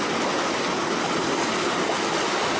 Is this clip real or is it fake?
real